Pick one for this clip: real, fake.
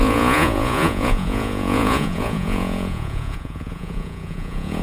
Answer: fake